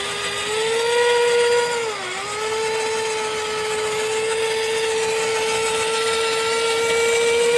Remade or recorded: recorded